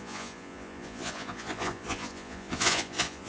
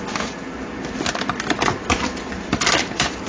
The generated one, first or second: first